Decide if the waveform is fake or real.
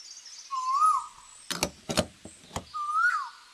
real